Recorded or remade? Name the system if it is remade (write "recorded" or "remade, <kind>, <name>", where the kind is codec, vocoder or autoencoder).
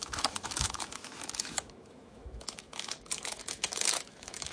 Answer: remade, autoencoder, DAC-VAE